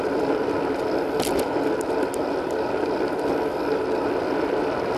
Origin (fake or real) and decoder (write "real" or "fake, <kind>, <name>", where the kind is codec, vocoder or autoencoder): real